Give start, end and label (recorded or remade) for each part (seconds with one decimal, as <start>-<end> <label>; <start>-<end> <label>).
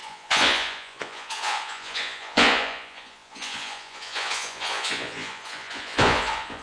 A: 0.0-6.6 remade